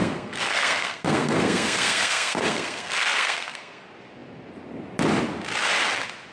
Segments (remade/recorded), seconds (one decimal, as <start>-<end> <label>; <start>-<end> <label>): 0.0-3.8 remade; 3.8-6.3 recorded